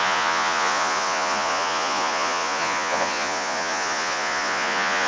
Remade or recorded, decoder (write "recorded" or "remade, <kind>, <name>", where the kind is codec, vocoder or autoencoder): remade, vocoder, Vocos